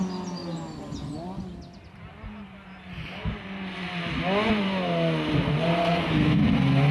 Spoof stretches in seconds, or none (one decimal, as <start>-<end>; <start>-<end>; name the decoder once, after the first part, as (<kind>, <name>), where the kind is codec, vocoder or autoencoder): 5.8-6.4 (codec, SNAC)